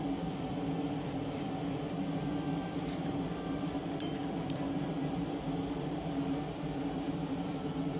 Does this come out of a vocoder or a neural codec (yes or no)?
yes